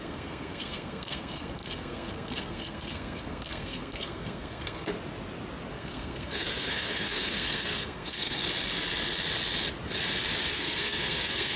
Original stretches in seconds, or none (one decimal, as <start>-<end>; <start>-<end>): 4.9-5.7; 8.4-10.5